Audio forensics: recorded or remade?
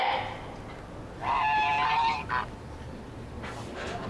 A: recorded